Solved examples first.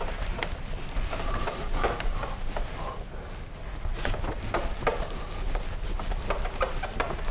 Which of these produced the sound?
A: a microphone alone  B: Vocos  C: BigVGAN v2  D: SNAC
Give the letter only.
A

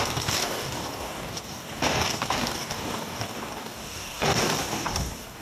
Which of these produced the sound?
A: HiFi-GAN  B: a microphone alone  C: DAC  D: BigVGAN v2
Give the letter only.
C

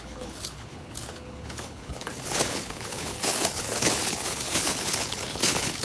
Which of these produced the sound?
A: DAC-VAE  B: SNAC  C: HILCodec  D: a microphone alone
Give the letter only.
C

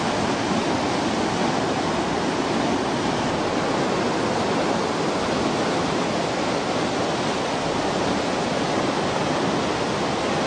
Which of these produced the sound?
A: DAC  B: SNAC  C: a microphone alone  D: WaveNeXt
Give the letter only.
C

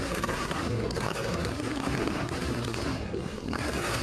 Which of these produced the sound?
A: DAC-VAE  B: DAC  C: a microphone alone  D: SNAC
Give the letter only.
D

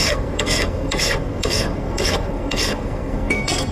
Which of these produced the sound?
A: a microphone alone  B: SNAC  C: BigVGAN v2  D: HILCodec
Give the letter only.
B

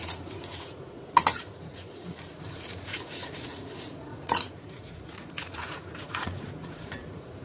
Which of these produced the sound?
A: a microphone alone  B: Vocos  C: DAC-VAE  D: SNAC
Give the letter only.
B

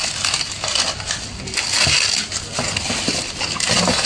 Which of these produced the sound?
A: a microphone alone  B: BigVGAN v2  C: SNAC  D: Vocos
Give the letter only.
A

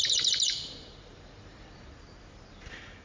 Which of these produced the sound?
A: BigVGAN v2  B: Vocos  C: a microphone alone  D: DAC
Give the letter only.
A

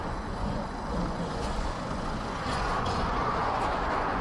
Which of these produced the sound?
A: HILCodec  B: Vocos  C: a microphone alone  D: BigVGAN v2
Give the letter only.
B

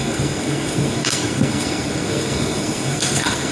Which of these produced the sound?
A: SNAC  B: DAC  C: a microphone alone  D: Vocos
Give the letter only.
A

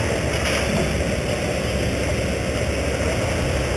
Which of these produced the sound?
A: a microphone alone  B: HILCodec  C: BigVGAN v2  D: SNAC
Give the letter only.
A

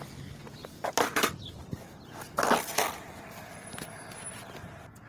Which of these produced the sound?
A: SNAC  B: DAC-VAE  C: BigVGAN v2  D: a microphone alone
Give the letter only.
D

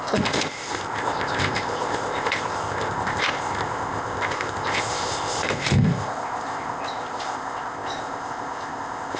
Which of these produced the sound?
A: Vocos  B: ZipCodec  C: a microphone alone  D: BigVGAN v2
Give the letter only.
B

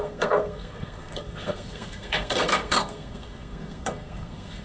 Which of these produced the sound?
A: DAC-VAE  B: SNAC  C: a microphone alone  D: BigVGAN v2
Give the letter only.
B